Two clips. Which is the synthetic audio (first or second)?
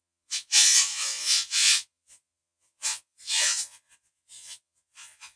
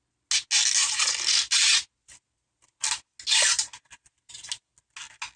first